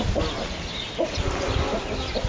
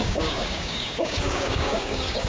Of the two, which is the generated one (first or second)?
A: second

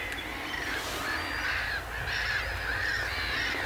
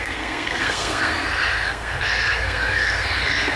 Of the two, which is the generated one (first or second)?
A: second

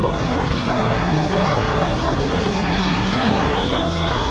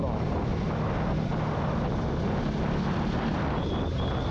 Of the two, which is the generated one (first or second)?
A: first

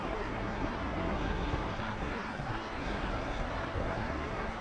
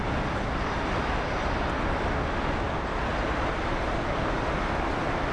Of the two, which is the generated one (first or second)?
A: first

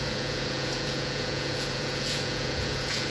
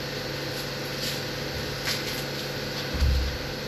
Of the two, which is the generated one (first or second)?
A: first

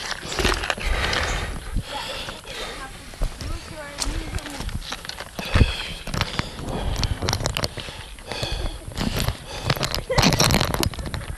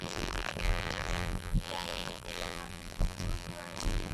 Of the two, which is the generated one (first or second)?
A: second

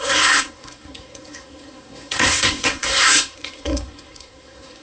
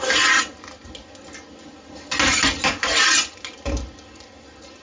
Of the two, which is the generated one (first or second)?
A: first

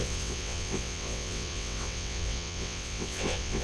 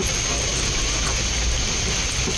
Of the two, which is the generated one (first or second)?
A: first